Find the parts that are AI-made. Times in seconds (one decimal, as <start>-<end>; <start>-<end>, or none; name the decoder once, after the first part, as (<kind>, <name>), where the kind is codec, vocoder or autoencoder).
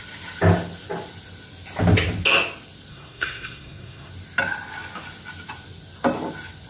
2.9-4.1 (codec, SNAC)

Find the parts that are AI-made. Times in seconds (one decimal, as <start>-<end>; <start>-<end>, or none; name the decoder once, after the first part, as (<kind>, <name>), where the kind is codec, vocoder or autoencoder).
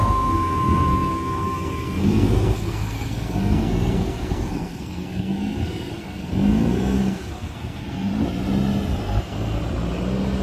0.0-8.1 (codec, SNAC); 9.0-9.6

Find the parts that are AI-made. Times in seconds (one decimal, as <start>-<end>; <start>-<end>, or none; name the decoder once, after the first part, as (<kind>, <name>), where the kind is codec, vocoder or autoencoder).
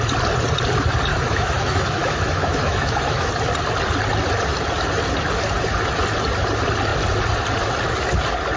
1.1-3.3 (autoencoder, DAC-VAE)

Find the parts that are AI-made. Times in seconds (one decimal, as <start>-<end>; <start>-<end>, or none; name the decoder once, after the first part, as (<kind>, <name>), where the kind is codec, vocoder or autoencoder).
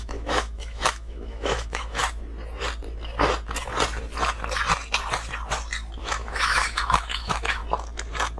0.0-2.0 (autoencoder, DAC-VAE); 6.0-7.6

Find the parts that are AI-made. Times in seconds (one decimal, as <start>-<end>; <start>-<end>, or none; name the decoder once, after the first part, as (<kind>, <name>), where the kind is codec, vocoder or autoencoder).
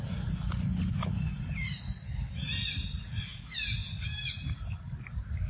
none